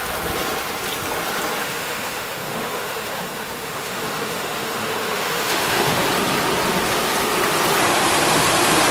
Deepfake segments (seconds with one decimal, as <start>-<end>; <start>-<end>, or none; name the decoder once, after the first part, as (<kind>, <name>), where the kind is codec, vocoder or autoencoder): 1.6-6.0 (autoencoder, DAC-VAE)